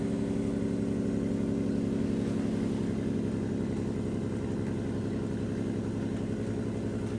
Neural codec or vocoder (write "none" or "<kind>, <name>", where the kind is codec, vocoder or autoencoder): none